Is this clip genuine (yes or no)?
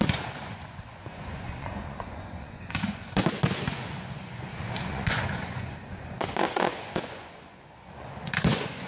no